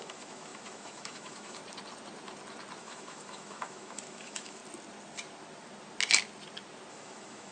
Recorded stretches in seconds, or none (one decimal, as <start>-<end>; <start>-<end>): 1.6-2.8; 4.6-6.9